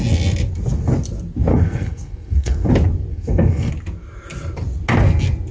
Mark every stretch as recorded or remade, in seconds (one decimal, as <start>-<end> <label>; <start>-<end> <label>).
0.0-1.5 recorded; 1.5-2.7 remade; 2.7-3.1 recorded; 3.1-3.7 remade; 3.7-5.5 recorded